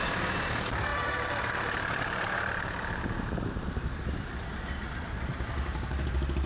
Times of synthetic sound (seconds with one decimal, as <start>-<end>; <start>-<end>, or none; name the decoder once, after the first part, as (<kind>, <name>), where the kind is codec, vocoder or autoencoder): 0.9-4.0 (vocoder, BigVGAN v2); 5.7-6.5